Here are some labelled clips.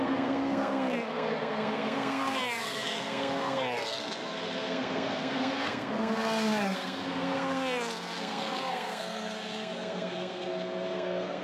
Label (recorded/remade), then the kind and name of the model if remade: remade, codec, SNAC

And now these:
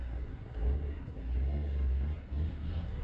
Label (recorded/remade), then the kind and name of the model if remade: remade, codec, SNAC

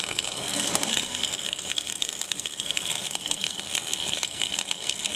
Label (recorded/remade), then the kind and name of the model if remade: remade, codec, SNAC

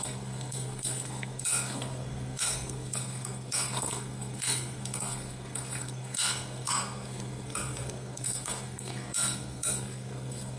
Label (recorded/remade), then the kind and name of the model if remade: remade, codec, SNAC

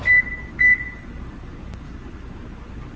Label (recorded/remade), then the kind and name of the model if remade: recorded